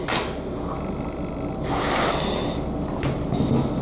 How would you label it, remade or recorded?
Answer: recorded